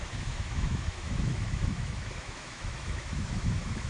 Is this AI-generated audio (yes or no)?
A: yes